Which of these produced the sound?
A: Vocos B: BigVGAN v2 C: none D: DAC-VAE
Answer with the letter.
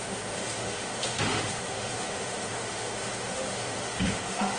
D